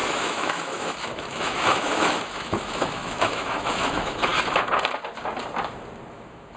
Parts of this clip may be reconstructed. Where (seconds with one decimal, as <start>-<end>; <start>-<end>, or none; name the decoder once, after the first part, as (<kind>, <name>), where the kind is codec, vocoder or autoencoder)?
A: 0.0-4.3 (autoencoder, DAC-VAE); 6.1-6.6